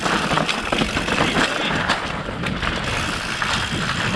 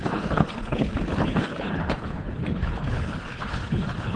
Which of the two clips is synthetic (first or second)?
second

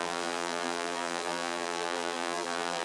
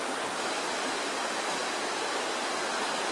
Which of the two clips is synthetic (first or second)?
first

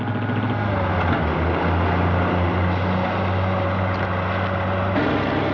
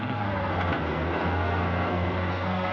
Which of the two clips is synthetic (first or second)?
second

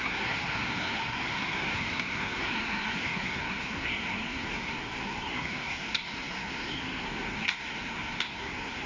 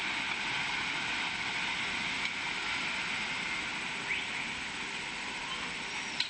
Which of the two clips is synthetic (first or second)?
first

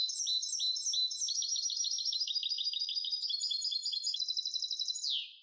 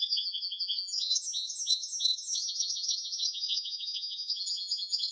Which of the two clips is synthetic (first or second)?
second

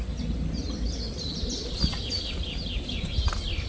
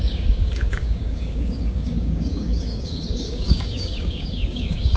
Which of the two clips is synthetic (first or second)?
second